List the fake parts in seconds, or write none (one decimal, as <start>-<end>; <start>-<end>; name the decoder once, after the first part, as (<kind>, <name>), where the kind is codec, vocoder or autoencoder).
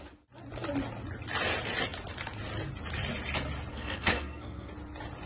3.7-4.7 (codec, SNAC)